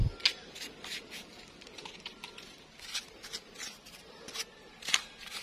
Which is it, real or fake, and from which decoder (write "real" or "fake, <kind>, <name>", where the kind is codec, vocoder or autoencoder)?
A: real